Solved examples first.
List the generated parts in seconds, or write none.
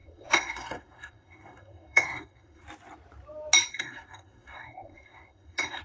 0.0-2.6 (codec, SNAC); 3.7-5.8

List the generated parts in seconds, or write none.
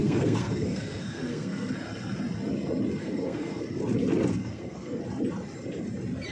0.0-1.7 (codec, SNAC); 3.0-3.6; 4.4-5.0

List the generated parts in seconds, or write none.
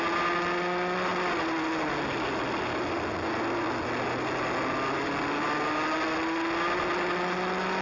none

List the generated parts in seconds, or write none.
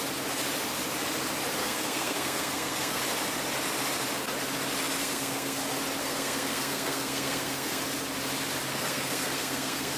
1.6-3.0 (codec, SNAC); 5.0-5.6; 6.0-7.8; 8.7-10.0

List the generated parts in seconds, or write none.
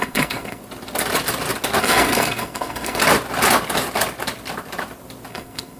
0.0-0.6 (codec, SNAC); 1.8-3.0; 5.3-5.8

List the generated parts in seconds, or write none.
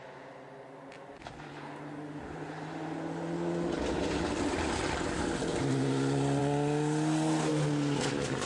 none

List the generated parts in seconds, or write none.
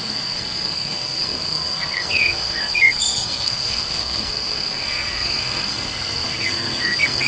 0.0-7.3 (codec, SNAC)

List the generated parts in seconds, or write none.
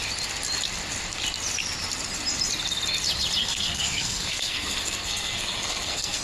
3.4-6.2 (codec, SNAC)